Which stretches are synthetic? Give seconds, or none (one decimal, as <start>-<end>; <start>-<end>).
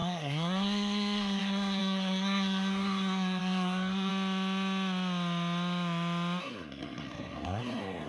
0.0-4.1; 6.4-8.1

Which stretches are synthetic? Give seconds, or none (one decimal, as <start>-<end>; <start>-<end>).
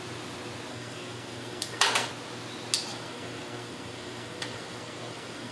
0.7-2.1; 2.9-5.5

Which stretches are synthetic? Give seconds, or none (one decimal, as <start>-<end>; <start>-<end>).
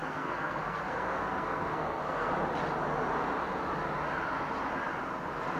0.0-2.3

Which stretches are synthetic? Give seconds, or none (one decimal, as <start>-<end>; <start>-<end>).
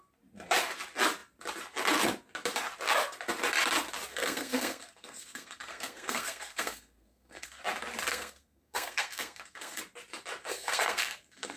4.1-7.6; 8.1-9.8; 10.4-11.6